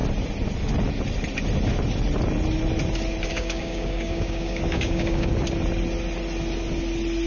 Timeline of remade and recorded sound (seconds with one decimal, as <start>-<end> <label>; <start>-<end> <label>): 0.0-3.3 recorded; 3.3-5.3 remade; 5.3-7.3 recorded